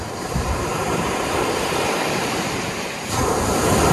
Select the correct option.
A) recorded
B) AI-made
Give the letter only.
B